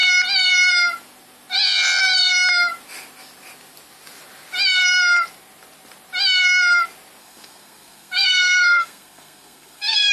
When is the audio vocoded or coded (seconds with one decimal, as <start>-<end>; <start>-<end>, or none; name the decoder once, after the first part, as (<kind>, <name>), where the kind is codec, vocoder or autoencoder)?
7.2-10.1 (codec, SNAC)